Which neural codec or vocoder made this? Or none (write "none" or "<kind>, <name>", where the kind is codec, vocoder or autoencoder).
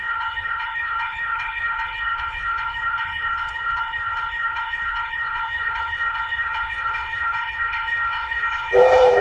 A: codec, HILCodec